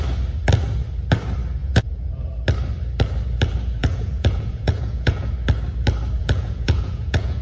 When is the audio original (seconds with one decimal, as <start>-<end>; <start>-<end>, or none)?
0.0-1.6; 2.2-3.8; 5.3-6.2

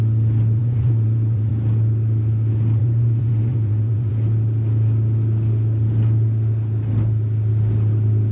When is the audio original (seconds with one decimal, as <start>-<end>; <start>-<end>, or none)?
0.0-0.6; 1.5-2.8; 4.1-8.3

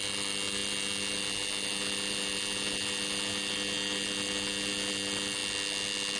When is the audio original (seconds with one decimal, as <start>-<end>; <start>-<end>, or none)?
0.0-6.2

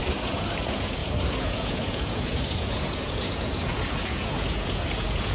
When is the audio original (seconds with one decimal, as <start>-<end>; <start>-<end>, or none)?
none

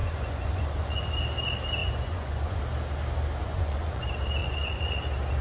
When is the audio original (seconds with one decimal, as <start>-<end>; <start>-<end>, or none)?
1.1-1.8; 2.6-3.4; 4.0-4.4; 5.0-5.4